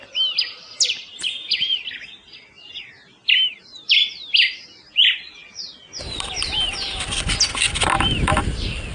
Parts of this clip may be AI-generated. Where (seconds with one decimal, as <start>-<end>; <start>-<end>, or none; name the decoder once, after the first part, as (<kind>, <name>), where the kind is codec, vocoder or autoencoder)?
1.3-1.8 (vocoder, Vocos)